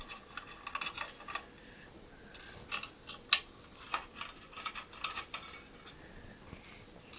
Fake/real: real